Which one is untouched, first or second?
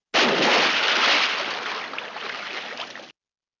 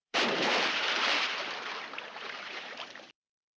first